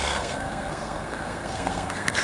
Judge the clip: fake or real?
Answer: fake